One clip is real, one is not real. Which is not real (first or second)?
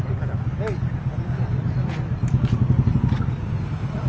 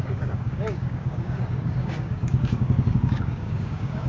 second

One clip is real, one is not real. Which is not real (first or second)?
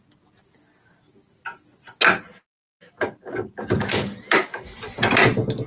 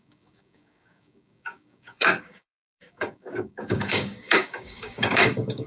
second